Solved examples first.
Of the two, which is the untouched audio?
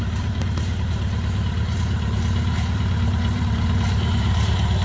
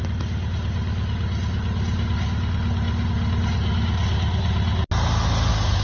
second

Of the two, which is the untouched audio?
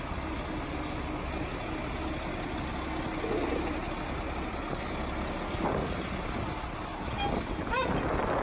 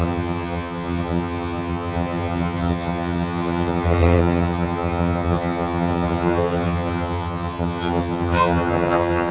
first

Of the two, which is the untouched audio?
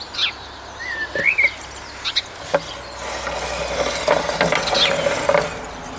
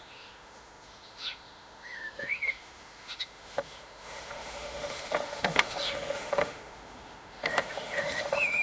first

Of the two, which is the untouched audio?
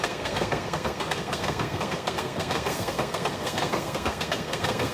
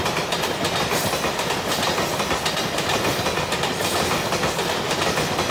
second